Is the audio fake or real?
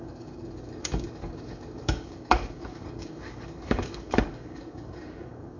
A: fake